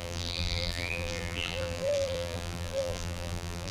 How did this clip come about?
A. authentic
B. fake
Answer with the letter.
B